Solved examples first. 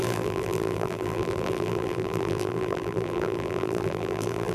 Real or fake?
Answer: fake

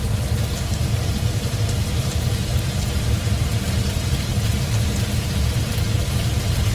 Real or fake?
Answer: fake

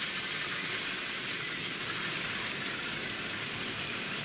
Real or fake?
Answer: fake